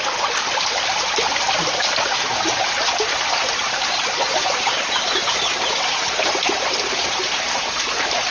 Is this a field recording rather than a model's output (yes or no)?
yes